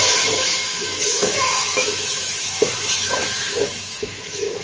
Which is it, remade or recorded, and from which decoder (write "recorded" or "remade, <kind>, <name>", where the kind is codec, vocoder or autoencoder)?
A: remade, autoencoder, DAC-VAE